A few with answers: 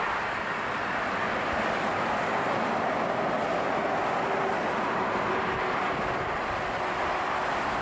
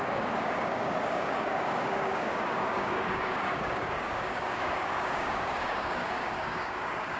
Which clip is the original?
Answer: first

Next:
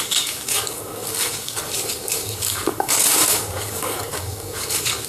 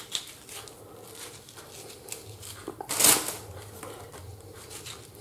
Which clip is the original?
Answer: second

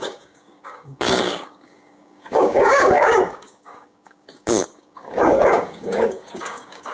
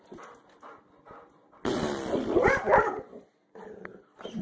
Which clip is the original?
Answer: second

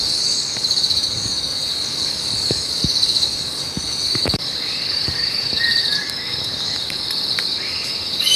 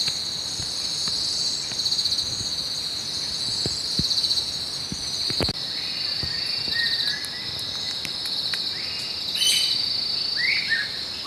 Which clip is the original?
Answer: second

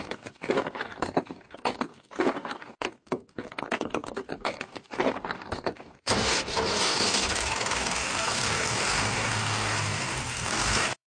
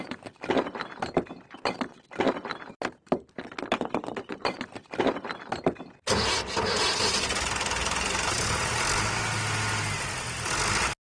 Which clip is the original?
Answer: second